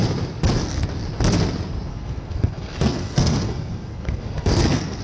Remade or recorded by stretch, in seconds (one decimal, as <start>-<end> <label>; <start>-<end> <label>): 0.0-1.9 recorded; 1.9-5.0 remade